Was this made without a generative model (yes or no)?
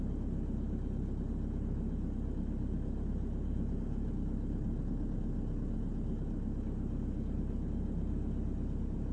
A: yes